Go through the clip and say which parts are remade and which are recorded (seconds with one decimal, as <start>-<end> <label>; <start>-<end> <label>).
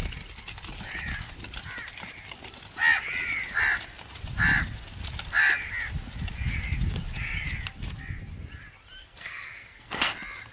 0.0-9.0 recorded; 9.0-10.1 remade; 10.1-10.5 recorded